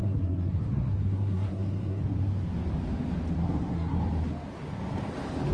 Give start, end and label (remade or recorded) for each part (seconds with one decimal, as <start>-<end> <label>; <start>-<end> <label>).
0.0-2.0 remade; 2.0-3.4 recorded; 3.4-4.0 remade; 4.0-5.5 recorded